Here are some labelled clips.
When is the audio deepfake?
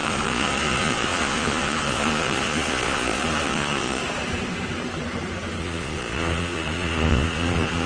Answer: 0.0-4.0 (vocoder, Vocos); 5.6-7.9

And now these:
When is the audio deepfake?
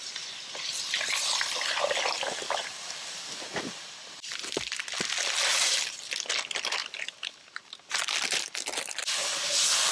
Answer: 5.5-6.0 (vocoder, BigVGAN v2); 6.8-8.1